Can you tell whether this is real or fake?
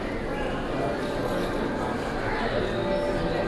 real